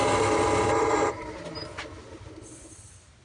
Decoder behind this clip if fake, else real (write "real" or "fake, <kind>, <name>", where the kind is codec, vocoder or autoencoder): real